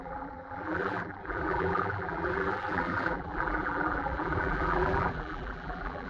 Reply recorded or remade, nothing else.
remade